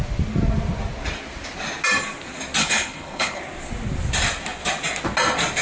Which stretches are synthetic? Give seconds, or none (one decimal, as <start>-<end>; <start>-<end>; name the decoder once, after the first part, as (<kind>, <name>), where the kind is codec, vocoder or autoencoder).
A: 2.6-3.4 (codec, HILCodec)